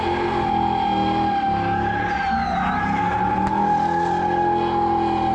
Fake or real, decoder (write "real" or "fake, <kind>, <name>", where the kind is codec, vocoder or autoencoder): real